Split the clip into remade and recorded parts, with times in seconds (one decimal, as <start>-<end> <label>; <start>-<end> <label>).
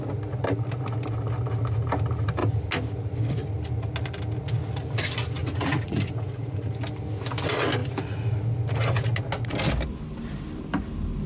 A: 0.0-5.4 recorded; 5.4-6.7 remade; 6.7-11.3 recorded